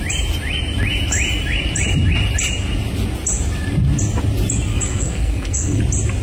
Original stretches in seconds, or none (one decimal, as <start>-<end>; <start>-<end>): 0.0-4.7; 5.8-6.2